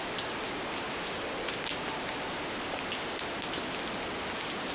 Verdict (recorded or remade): recorded